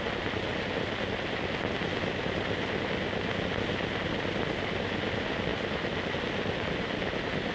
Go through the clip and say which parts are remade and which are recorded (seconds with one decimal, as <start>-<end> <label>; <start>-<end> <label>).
0.0-7.5 recorded